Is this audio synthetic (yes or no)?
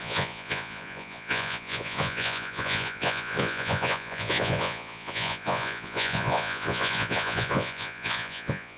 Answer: yes